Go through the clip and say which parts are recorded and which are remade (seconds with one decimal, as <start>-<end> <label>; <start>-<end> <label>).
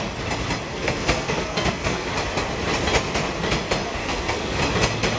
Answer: 0.0-0.7 recorded; 0.7-2.1 remade; 2.1-4.0 recorded; 4.0-4.6 remade; 4.6-5.2 recorded